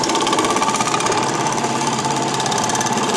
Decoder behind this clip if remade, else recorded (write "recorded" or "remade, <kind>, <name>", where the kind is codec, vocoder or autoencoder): remade, vocoder, BigVGAN v2